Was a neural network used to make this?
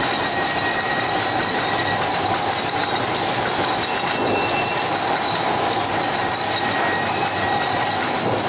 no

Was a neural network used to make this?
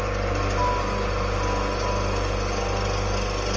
no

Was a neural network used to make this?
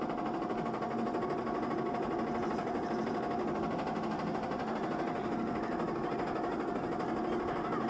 no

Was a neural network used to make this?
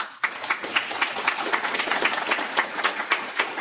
yes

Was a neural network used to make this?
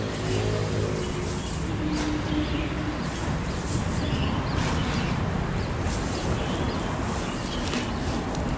no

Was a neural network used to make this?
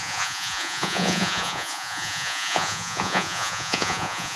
yes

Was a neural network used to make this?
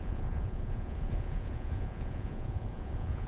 yes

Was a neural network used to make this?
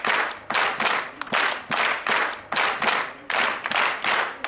no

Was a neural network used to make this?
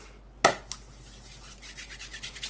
no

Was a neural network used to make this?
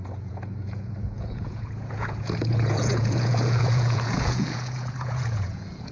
yes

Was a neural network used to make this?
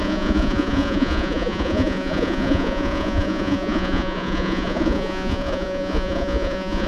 yes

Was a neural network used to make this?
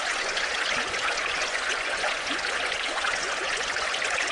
yes